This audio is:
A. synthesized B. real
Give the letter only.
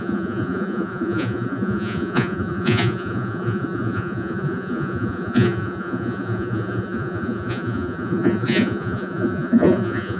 A